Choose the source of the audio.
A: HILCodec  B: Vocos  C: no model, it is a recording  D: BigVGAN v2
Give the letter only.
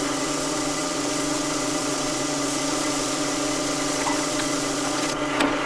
B